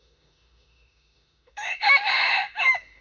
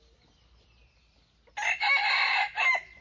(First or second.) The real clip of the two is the second